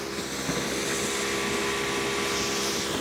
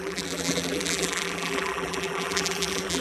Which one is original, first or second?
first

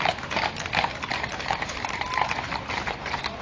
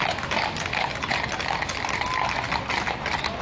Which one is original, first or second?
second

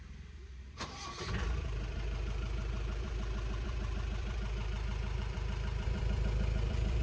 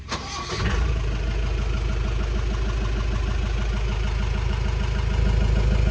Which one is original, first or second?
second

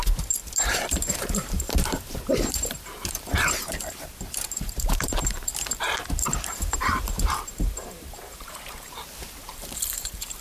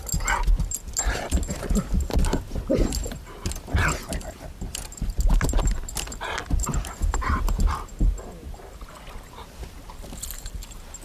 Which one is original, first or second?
second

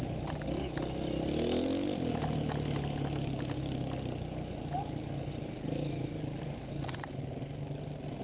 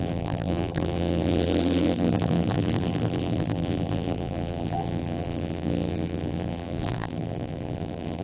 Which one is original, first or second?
first